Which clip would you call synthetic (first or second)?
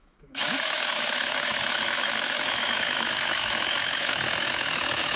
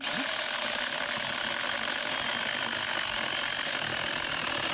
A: first